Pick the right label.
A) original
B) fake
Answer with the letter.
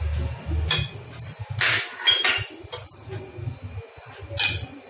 A